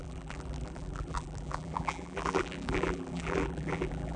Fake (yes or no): yes